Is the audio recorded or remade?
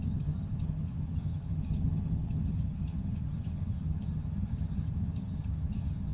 remade